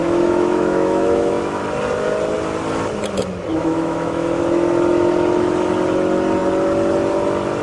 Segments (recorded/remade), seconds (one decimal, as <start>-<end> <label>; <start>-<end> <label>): 0.0-1.6 remade; 1.6-3.5 recorded; 3.5-4.4 remade; 4.4-7.6 recorded